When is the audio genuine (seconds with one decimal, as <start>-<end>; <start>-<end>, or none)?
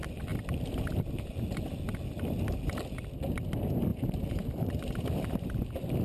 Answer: 1.2-3.9; 5.4-6.0